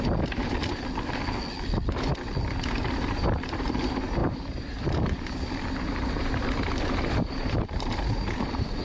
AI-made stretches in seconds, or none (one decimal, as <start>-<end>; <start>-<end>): 0.0-0.6; 2.5-8.8

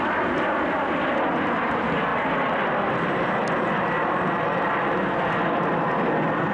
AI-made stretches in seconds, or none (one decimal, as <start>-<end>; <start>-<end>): none

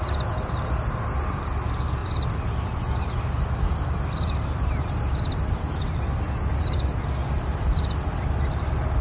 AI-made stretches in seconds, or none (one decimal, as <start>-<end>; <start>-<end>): none

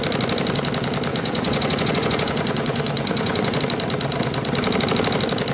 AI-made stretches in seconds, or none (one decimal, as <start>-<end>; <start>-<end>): 1.1-3.6

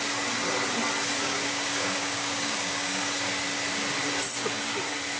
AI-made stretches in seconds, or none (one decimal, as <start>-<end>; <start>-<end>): 1.2-3.0